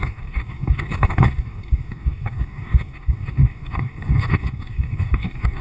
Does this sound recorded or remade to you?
remade